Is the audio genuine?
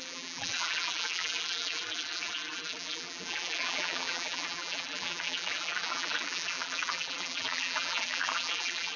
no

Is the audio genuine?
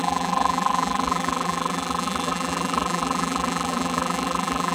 no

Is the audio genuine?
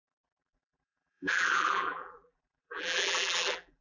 no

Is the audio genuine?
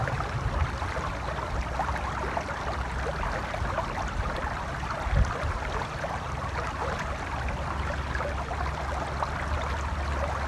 yes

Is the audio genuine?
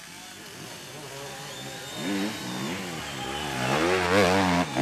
yes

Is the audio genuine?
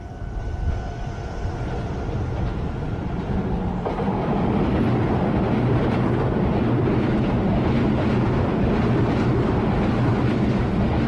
yes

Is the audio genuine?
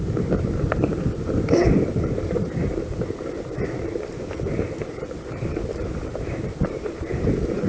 no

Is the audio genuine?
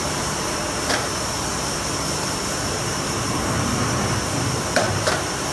no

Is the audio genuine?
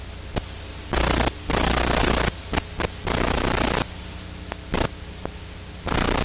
yes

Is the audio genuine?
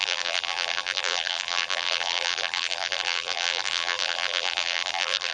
no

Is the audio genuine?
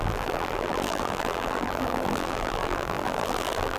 no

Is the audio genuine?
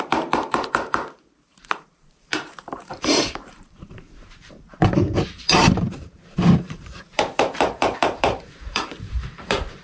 no